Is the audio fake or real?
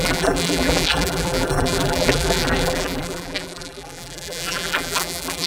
fake